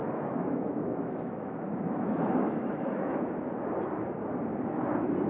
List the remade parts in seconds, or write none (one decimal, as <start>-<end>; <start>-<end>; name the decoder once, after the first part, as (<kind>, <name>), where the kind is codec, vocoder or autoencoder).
0.0-3.2 (autoencoder, DAC-VAE)